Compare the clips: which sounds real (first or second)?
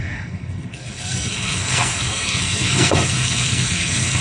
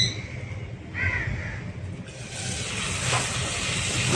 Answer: second